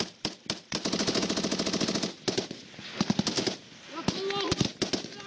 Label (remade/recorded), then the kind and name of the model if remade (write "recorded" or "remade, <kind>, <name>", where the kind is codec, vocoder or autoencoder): recorded